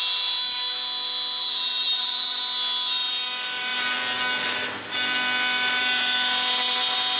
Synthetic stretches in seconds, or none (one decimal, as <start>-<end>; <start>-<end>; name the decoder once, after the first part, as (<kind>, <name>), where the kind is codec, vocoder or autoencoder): 1.4-2.4 (vocoder, BigVGAN v2)